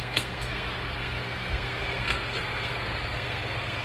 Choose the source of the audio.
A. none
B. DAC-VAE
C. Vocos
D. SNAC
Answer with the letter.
D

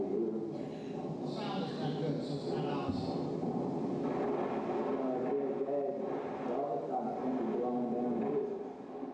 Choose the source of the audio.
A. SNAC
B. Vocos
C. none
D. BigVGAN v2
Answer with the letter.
C